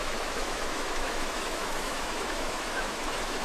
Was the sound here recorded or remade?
remade